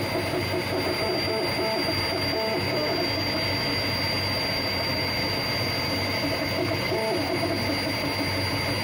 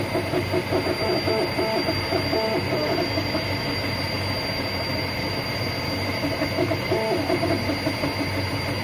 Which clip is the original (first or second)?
first